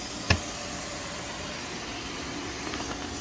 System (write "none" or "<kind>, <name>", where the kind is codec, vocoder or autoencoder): none